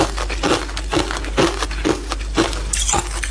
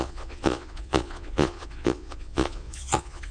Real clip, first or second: first